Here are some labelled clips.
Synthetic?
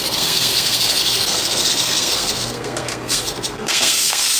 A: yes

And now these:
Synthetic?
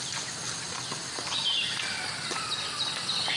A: no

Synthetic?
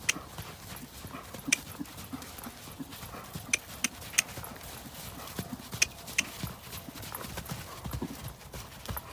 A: no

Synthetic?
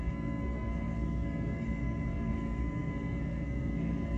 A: yes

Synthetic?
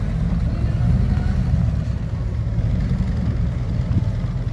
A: no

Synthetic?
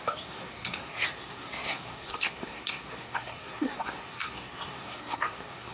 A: yes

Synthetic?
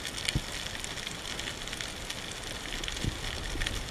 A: no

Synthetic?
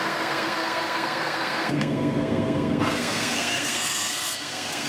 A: yes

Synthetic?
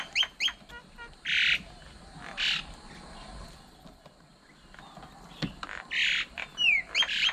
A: no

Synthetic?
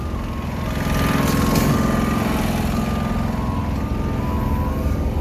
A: no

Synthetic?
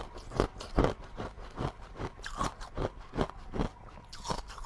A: no